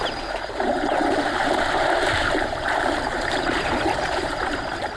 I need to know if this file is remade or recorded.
remade